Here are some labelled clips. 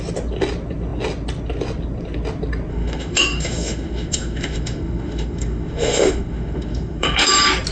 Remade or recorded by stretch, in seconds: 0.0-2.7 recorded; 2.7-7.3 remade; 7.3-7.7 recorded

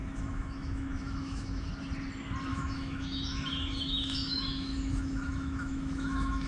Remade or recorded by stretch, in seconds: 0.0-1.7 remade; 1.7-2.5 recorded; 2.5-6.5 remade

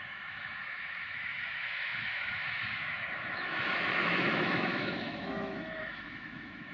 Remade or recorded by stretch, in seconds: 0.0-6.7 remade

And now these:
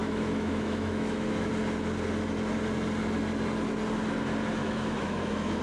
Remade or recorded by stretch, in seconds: 0.0-1.5 remade; 1.5-4.6 recorded; 4.6-5.6 remade

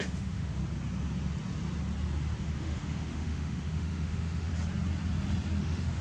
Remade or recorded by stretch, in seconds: 0.0-0.6 remade; 0.6-2.4 recorded; 2.4-4.5 remade; 4.5-5.6 recorded; 5.6-6.0 remade

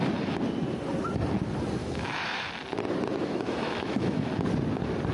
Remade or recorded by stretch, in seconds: 0.0-1.8 recorded; 1.8-2.5 remade; 2.5-3.2 recorded; 3.2-4.3 remade; 4.3-5.1 recorded